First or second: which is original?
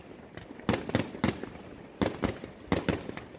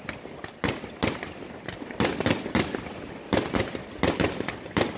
first